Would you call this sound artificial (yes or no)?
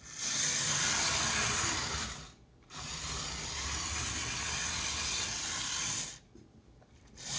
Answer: no